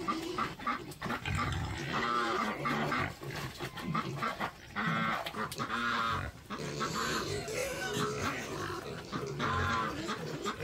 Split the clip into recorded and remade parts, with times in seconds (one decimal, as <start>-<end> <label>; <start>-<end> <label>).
0.0-10.6 recorded